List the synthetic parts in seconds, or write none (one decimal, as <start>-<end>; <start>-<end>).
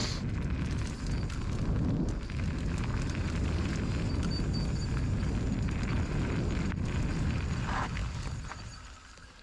none